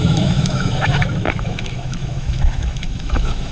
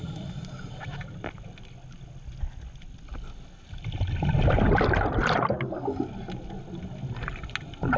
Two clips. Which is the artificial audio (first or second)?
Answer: first